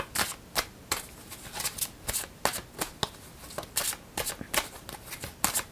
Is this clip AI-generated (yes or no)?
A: no